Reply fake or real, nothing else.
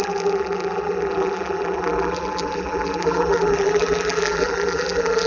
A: fake